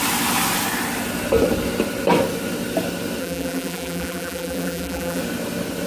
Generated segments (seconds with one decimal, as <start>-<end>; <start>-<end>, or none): 3.2-5.2